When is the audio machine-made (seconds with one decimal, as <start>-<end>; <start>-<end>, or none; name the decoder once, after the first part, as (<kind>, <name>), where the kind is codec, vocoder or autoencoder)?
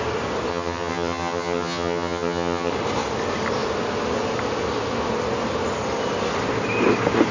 0.5-2.7 (vocoder, HiFi-GAN)